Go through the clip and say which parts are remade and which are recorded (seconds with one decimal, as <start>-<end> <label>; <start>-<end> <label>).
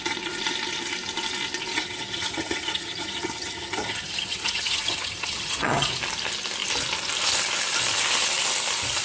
0.0-1.7 recorded; 1.7-6.0 remade; 6.0-9.0 recorded